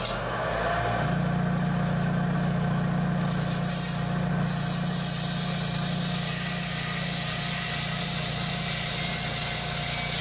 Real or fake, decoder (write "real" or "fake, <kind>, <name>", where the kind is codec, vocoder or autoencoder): real